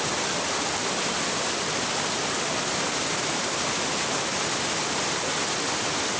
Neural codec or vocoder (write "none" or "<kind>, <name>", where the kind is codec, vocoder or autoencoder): none